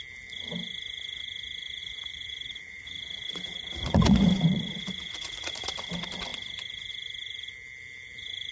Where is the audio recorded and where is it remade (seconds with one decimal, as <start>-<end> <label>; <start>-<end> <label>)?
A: 0.0-1.8 recorded; 1.8-5.7 remade; 5.7-8.5 recorded